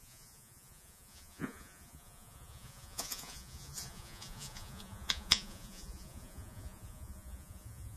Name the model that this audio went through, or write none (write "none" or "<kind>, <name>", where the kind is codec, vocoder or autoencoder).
vocoder, Vocos